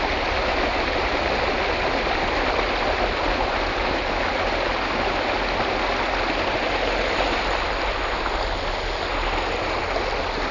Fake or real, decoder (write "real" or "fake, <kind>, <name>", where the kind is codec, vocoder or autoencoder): real